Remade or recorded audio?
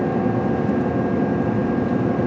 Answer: recorded